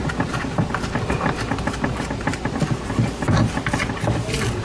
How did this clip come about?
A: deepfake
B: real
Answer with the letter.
A